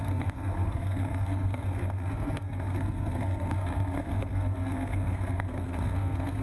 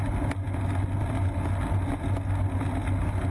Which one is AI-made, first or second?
first